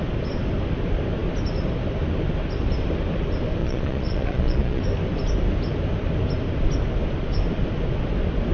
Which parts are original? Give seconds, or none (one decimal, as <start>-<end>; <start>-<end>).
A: 0.0-3.6; 4.8-8.5